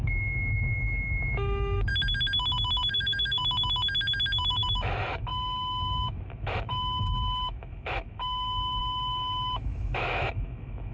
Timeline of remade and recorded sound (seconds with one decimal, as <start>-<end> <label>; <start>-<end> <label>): 0.0-1.9 remade; 1.9-2.9 recorded; 2.9-3.4 remade; 3.4-4.5 recorded; 4.5-10.9 remade